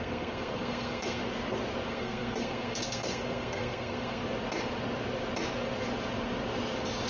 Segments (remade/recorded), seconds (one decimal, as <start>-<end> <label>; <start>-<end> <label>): 0.0-1.2 remade; 1.2-1.9 recorded; 1.9-4.2 remade; 4.2-7.1 recorded